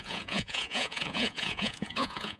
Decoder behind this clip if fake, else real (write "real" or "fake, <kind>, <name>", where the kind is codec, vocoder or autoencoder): fake, vocoder, Vocos